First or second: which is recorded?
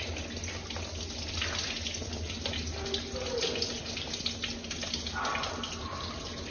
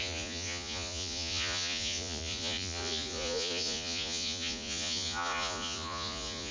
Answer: first